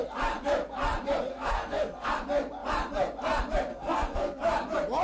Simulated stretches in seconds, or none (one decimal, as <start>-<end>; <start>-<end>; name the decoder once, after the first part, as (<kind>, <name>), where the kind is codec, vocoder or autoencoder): 1.3-2.1 (codec, SNAC); 3.7-4.4